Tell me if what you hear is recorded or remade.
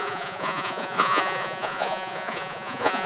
remade